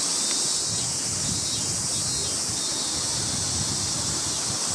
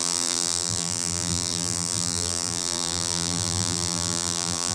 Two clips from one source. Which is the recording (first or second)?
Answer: first